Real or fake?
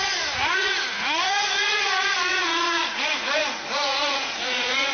fake